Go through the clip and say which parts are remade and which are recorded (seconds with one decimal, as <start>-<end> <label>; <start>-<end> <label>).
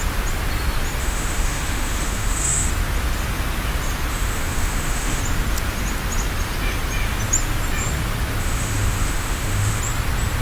0.0-1.0 recorded; 1.0-2.7 remade; 2.7-4.1 recorded; 4.1-5.2 remade; 5.2-8.4 recorded; 8.4-9.8 remade; 9.8-10.4 recorded